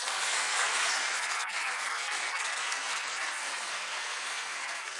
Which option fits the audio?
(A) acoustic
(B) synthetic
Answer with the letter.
B